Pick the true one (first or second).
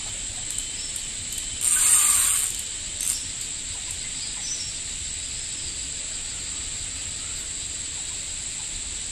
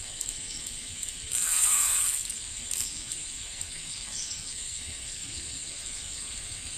first